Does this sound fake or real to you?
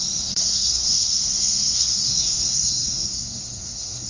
fake